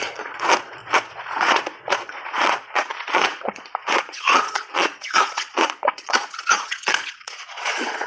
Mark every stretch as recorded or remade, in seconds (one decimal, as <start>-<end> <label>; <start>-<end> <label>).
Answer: 0.0-8.1 remade